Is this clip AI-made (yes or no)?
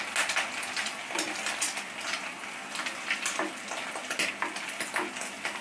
no